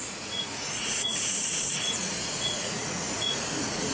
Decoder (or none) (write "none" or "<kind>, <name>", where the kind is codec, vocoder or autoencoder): vocoder, Vocos